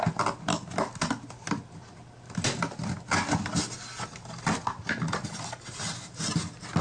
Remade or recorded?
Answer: recorded